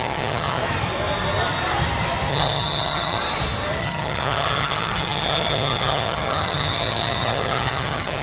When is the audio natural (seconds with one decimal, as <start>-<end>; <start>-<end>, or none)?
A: 0.6-2.3; 3.2-3.8